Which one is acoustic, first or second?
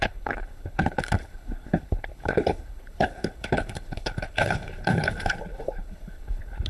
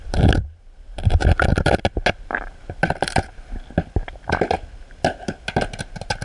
second